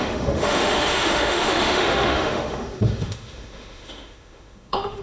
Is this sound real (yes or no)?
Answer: no